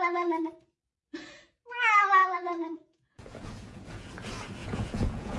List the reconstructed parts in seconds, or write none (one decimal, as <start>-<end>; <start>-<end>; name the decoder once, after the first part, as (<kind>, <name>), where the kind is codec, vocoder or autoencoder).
2.2-4.1 (vocoder, Vocos); 4.6-5.4

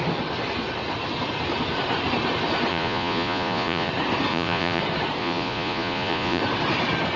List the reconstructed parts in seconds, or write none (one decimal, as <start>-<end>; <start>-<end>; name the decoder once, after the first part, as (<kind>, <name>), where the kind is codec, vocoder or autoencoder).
2.7-3.9 (vocoder, Vocos); 4.3-4.8; 5.2-6.4

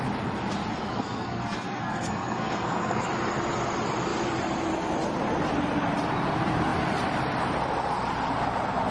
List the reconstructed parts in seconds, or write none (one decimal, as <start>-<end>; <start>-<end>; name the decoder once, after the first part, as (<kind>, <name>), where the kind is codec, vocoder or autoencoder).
0.8-3.1 (codec, SNAC)

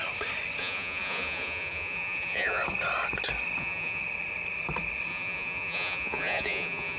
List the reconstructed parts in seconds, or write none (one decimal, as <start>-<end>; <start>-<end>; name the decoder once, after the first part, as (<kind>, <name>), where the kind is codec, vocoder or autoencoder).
0.6-2.6 (vocoder, Vocos); 3.6-4.0; 5.1-7.0

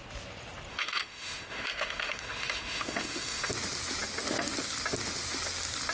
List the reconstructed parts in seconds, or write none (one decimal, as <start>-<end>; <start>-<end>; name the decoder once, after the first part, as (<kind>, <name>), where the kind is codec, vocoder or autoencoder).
0.7-3.5 (autoencoder, DAC-VAE)

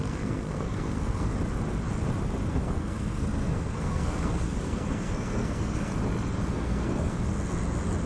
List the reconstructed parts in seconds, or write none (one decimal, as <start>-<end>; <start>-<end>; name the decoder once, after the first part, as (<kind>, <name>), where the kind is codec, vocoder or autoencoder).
0.0-1.3 (codec, SNAC); 2.5-5.9; 6.5-7.3